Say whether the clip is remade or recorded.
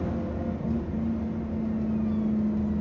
recorded